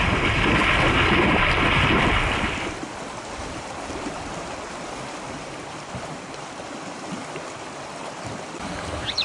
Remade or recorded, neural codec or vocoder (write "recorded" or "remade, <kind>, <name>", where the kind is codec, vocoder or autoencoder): remade, vocoder, BigVGAN v2